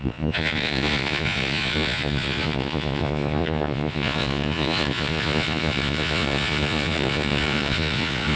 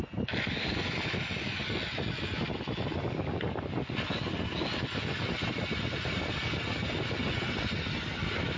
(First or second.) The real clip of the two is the second